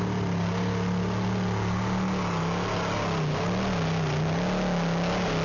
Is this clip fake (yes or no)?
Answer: no